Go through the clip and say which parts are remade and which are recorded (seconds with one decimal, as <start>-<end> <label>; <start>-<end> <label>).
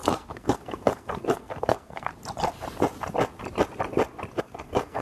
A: 0.0-2.1 remade; 2.1-4.4 recorded; 4.4-5.0 remade